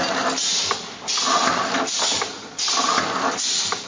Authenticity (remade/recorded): recorded